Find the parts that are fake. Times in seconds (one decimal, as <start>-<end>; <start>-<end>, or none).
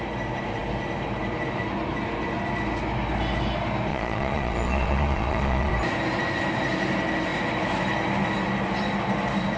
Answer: 3.9-5.7